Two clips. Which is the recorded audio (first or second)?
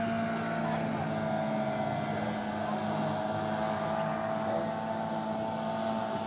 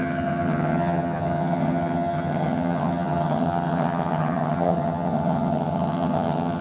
first